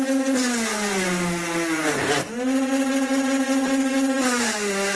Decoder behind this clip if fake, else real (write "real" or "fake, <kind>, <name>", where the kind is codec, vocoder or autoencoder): real